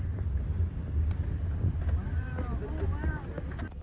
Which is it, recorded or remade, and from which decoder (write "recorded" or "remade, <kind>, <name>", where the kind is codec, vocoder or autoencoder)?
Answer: recorded